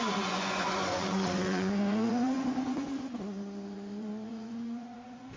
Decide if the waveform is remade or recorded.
remade